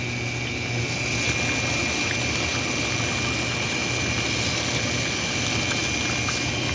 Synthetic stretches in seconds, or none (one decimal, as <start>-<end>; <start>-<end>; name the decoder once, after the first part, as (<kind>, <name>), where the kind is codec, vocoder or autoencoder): none